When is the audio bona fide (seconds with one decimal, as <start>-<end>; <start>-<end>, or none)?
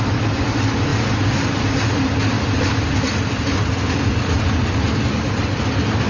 0.0-6.1